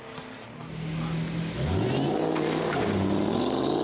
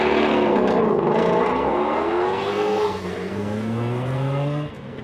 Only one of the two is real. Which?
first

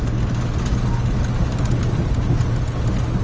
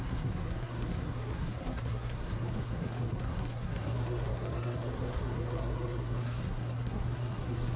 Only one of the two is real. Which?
first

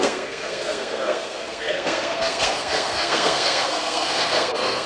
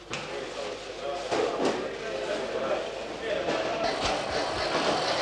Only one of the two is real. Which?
second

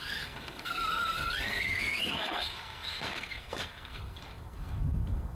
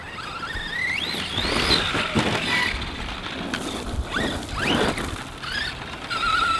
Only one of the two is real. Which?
second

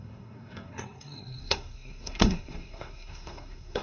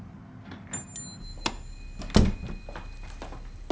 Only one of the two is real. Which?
second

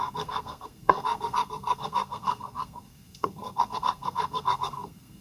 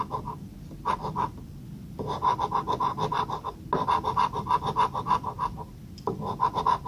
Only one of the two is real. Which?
second